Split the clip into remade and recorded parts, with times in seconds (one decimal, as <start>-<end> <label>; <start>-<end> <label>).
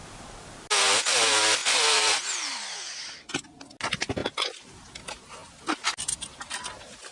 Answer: 0.0-1.6 recorded; 1.6-2.9 remade; 2.9-4.2 recorded; 4.2-4.8 remade; 4.8-7.1 recorded